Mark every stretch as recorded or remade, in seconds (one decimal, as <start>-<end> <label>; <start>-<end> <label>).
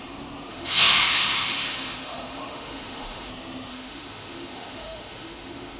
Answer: 0.0-0.5 recorded; 0.5-3.3 remade; 3.3-3.7 recorded; 3.7-5.8 remade